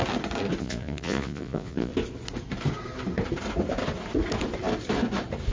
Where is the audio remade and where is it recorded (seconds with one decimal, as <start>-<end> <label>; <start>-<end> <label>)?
0.0-0.6 recorded; 0.6-1.9 remade; 1.9-5.5 recorded